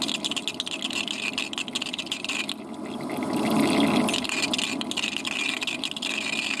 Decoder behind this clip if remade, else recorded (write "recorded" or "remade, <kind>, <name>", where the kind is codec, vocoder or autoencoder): recorded